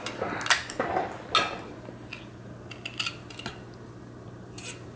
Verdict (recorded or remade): recorded